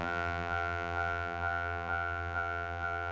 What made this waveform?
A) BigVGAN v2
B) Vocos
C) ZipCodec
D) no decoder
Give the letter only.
A